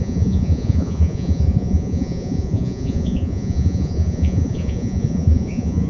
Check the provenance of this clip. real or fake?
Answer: fake